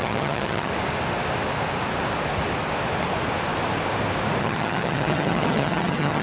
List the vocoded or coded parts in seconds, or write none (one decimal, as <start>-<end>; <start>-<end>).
0.0-0.7; 4.4-6.2